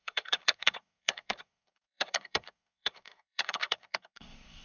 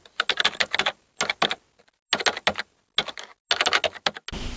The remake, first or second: first